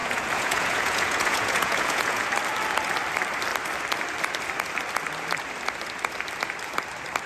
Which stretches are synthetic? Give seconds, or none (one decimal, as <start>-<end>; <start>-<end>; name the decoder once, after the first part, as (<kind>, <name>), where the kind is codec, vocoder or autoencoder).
0.0-2.2 (vocoder, Vocos)